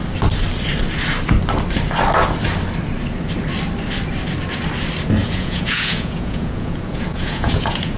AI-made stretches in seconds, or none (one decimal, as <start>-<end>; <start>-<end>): 5.2-8.0

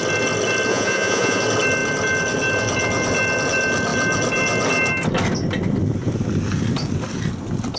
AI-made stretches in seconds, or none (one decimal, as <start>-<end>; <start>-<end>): 0.7-1.4

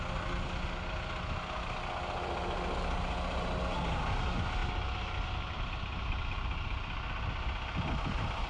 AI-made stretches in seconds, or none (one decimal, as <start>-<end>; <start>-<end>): none

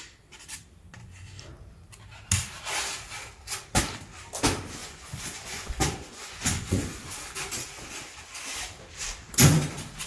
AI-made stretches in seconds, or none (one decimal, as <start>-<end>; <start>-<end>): 4.8-7.0

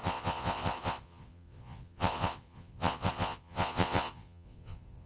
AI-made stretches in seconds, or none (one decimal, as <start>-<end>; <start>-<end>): 0.0-5.1